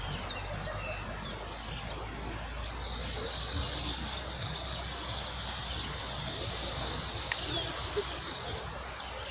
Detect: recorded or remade recorded